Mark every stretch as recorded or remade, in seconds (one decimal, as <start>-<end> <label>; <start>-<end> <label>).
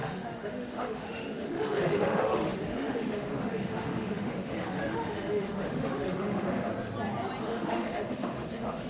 0.0-6.7 remade; 6.7-7.4 recorded; 7.4-8.9 remade